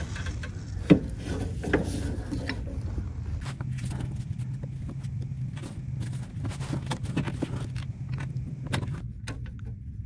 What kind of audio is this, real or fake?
real